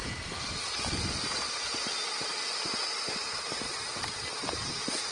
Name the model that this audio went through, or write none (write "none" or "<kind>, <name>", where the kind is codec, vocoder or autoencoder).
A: none